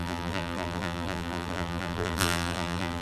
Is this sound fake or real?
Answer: fake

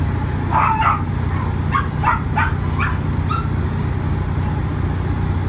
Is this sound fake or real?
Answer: real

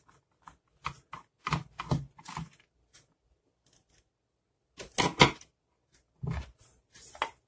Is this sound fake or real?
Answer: real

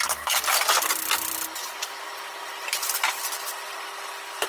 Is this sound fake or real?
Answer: real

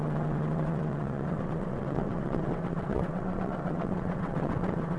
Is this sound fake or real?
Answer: fake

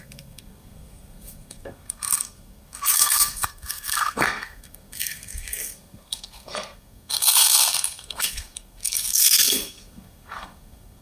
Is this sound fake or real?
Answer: fake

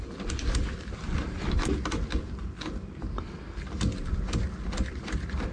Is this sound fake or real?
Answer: real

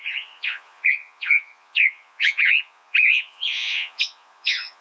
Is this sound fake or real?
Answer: fake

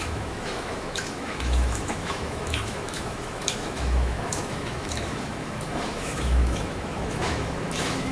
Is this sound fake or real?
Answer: fake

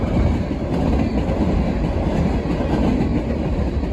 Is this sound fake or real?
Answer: real